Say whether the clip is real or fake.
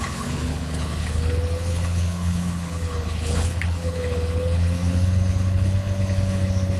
fake